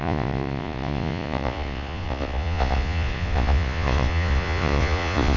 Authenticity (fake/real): fake